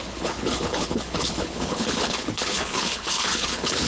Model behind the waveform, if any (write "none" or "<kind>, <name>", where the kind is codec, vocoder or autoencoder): codec, HILCodec